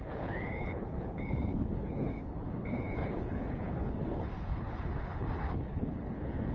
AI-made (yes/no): yes